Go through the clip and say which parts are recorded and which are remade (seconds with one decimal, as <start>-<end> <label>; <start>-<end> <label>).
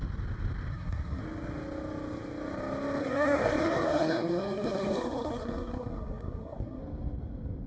0.0-0.7 recorded; 0.7-1.2 remade; 1.2-3.0 recorded; 3.0-6.8 remade; 6.8-7.7 recorded